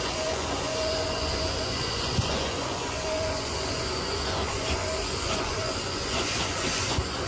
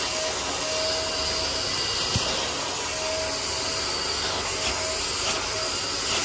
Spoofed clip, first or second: first